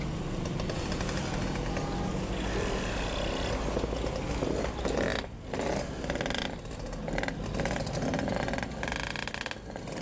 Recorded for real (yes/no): yes